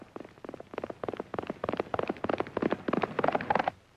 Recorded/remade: recorded